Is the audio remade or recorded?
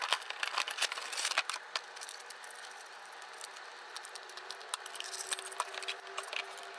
recorded